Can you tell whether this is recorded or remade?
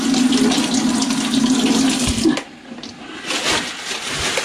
recorded